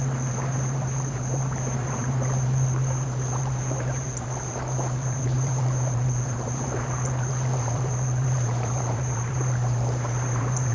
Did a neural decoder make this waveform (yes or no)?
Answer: yes